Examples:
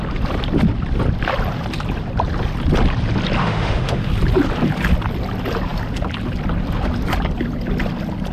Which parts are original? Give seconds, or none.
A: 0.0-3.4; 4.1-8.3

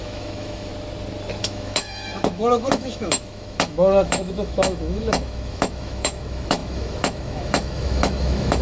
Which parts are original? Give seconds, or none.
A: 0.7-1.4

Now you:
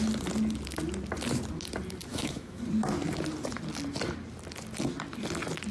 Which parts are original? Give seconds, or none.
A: 0.0-2.1; 2.6-5.7

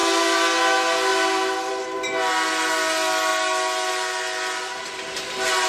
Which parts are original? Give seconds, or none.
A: 0.0-5.7